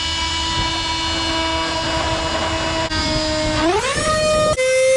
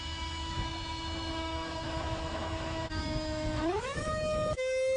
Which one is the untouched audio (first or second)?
first